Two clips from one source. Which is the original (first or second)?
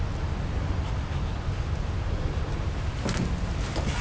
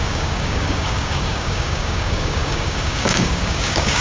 first